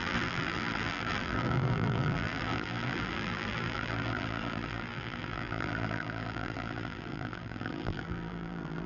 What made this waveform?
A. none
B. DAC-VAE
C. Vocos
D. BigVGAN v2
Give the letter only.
D